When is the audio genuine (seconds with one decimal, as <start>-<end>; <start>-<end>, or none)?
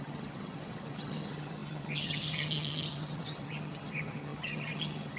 none